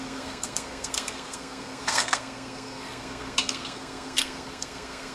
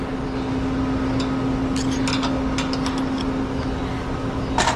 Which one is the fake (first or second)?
first